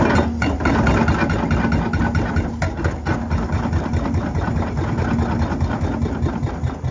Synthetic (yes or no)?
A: no